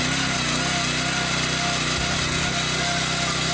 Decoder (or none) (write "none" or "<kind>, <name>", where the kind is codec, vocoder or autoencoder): none